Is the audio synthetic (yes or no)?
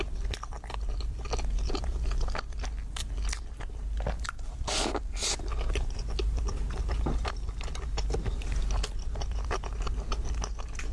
no